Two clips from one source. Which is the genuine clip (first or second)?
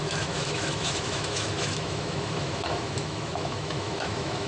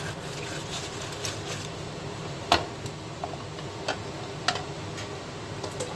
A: second